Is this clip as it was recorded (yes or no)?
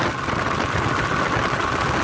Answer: yes